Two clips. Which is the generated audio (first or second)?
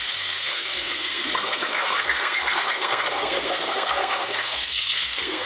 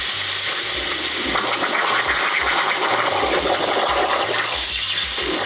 first